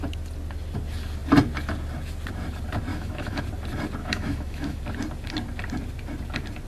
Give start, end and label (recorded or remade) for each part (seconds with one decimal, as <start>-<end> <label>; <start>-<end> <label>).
0.0-2.9 recorded; 2.9-3.4 remade; 3.4-4.0 recorded; 4.0-4.8 remade; 4.8-6.7 recorded